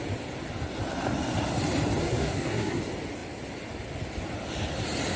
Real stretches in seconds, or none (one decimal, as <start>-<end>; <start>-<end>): 0.0-2.0; 2.8-5.2